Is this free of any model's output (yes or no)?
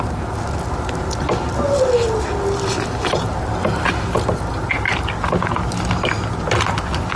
yes